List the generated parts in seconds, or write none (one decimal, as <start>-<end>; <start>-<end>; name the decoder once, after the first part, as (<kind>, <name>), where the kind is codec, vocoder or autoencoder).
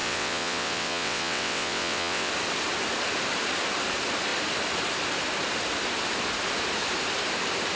0.0-2.3 (vocoder, WaveNeXt)